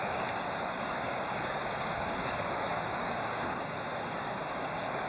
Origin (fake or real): fake